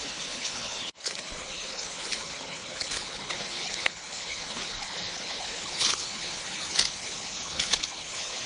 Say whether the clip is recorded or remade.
remade